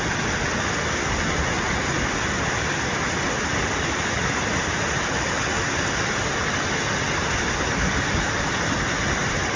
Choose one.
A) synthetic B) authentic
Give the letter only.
B